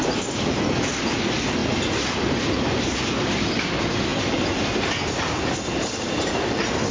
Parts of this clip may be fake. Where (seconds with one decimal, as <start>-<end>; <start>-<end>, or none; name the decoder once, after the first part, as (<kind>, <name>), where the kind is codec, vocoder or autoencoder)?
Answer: 1.6-3.2 (vocoder, BigVGAN v2); 4.1-6.5